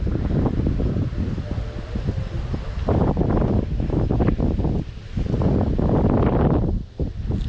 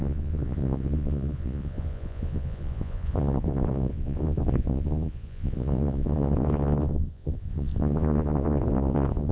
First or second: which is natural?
first